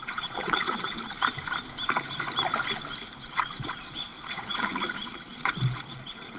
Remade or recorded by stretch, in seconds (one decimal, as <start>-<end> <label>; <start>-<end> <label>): 0.0-1.0 remade; 1.0-3.2 recorded; 3.2-6.4 remade